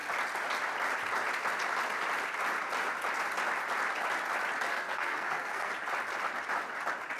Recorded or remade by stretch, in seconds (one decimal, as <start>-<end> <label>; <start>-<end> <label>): 0.0-4.7 recorded; 4.7-5.7 remade; 5.7-7.2 recorded